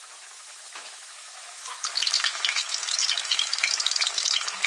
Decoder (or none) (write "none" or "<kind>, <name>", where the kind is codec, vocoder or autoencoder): autoencoder, DAC-VAE